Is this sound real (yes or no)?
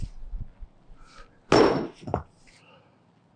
yes